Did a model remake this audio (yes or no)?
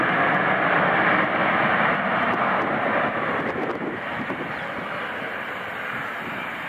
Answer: no